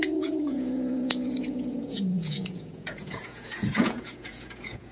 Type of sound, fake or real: fake